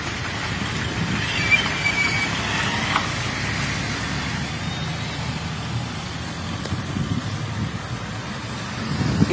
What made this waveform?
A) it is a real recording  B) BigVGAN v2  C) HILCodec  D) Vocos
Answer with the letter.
A